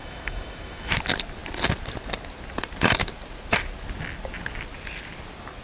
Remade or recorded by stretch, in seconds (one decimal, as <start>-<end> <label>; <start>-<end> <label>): 0.0-0.9 remade; 0.9-5.6 recorded